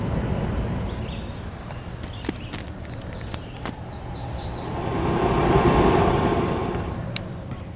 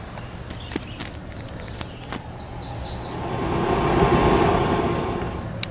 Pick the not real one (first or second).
first